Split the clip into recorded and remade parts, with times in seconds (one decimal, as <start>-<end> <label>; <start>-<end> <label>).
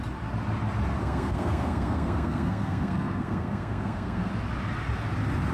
0.0-1.0 recorded; 1.0-4.3 remade; 4.3-5.5 recorded